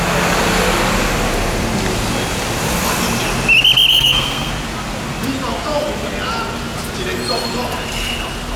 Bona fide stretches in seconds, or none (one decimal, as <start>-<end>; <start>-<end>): 0.0-3.9; 4.5-8.6